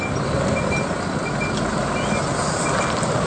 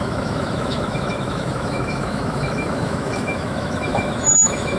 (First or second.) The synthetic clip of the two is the second